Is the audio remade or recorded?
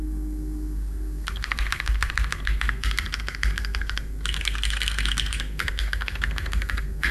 remade